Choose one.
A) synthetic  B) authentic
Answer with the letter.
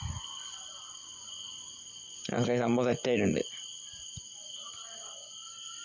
A